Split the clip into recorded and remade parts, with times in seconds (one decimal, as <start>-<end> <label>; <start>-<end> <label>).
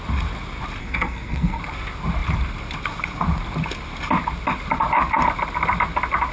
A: 0.0-0.8 recorded; 0.8-1.6 remade; 1.6-6.3 recorded